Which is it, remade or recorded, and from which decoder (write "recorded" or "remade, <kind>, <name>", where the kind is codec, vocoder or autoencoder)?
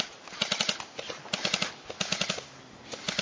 recorded